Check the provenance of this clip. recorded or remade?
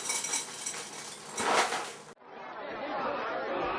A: recorded